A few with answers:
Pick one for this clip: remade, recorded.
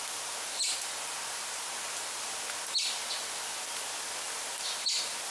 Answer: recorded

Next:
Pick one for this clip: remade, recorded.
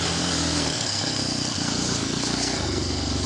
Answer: remade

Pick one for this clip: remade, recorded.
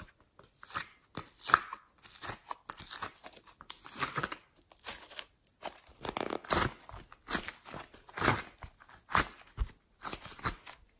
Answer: recorded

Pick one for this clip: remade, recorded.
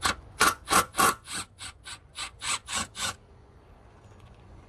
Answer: remade